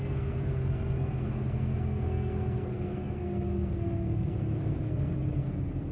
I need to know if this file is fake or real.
fake